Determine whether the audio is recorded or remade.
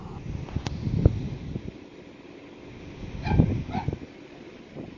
recorded